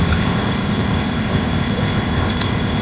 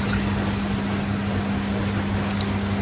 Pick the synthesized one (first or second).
first